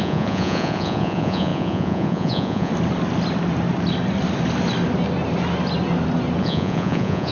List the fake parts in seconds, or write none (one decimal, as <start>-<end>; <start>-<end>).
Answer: 0.0-2.7; 6.4-7.3